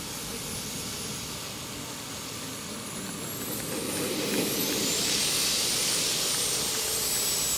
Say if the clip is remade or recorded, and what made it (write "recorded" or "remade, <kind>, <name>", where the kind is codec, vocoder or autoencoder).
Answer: recorded